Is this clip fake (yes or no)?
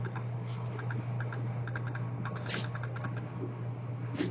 no